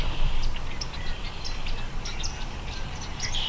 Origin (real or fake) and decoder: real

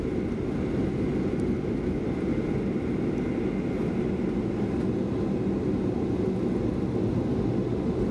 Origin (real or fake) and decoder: real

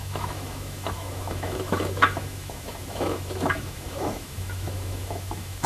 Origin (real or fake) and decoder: fake, autoencoder, DAC-VAE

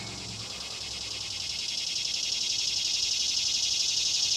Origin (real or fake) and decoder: real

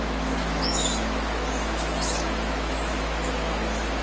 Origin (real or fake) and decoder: fake, autoencoder, DAC-VAE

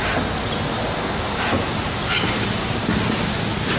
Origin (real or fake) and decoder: real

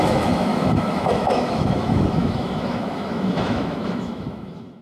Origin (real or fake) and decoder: fake, autoencoder, DAC-VAE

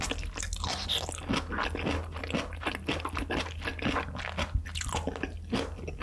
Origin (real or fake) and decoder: real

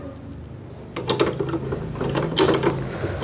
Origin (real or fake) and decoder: real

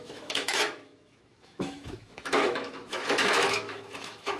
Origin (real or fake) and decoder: fake, autoencoder, DAC-VAE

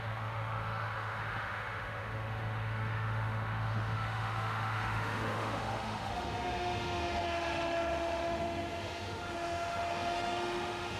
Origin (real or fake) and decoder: fake, autoencoder, DAC-VAE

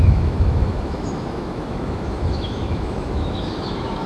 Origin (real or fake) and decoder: fake, autoencoder, DAC-VAE